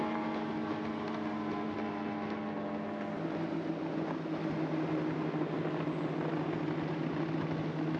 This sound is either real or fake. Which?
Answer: real